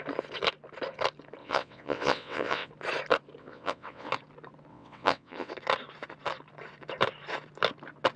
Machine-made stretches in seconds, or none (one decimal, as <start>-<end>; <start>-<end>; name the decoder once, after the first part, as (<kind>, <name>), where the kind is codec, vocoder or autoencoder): 1.4-2.7 (vocoder, WaveNeXt); 3.4-4.1; 4.7-5.5